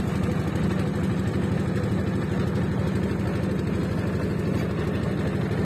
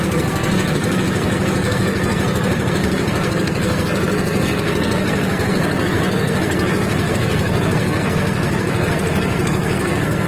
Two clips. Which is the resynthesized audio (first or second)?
second